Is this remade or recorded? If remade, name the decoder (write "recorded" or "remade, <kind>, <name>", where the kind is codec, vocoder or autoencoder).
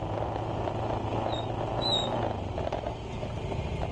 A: recorded